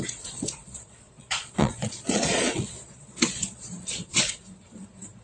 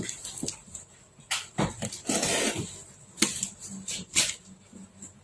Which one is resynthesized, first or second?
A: first